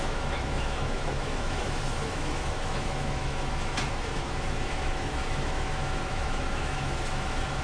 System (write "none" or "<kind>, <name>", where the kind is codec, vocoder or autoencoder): autoencoder, DAC-VAE